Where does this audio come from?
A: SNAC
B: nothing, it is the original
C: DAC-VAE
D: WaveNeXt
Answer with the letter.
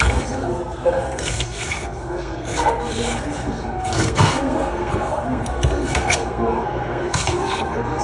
A